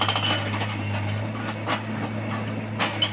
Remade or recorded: recorded